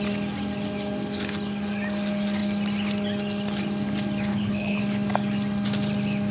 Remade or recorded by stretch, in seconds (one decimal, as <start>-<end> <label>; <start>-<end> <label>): 0.0-4.3 recorded; 4.3-4.8 remade; 4.8-6.3 recorded